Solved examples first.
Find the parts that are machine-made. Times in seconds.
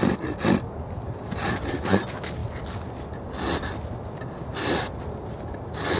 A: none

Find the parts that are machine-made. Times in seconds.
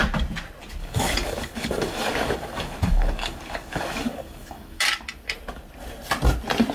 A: 0.8-4.8 (codec, DAC)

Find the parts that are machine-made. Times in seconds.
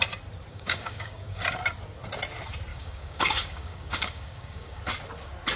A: 0.5-1.4 (codec, DAC); 2.7-4.8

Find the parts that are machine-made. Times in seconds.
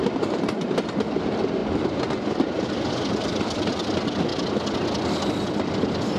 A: none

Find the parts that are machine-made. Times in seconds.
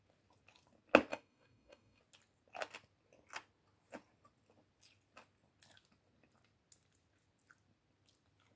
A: 1.1-2.0 (codec, DAC)